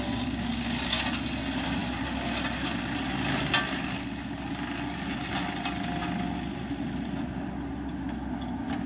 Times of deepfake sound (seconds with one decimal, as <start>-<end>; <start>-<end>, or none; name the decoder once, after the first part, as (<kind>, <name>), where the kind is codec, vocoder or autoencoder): none